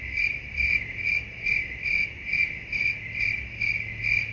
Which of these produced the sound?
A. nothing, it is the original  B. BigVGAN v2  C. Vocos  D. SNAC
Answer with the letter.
A